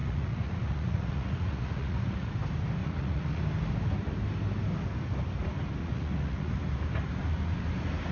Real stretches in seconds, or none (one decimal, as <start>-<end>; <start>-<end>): 2.3-2.8; 3.4-5.8; 6.5-8.1